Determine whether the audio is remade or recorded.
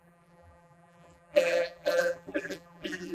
remade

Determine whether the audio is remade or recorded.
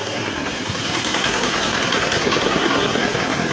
remade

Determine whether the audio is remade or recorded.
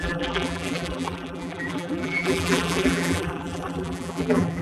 remade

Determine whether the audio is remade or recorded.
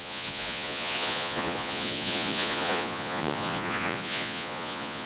remade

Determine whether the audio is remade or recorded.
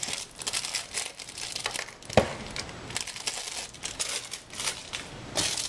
recorded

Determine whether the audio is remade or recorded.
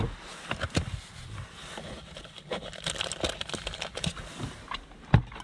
recorded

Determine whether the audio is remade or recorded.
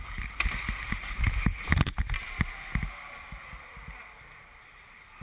recorded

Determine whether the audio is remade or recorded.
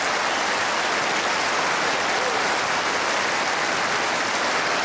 recorded